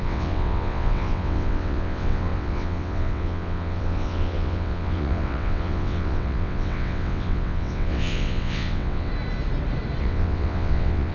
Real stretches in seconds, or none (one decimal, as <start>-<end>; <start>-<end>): 9.1-10.0